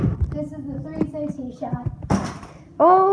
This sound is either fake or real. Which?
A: real